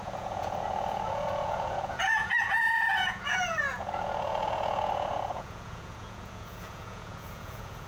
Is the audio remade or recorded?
remade